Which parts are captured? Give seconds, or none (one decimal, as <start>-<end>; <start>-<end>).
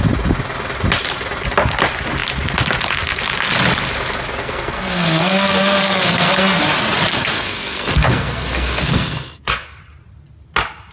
0.0-4.4; 6.6-7.1; 9.8-10.9